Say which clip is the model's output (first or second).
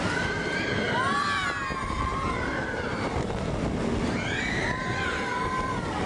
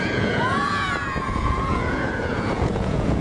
second